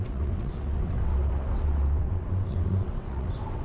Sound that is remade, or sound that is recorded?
remade